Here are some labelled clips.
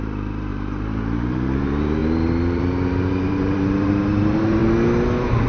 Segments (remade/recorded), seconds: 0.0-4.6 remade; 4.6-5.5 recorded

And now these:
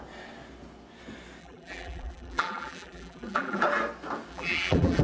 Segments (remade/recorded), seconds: 0.0-1.4 recorded; 1.4-3.6 remade; 3.6-4.3 recorded; 4.3-5.0 remade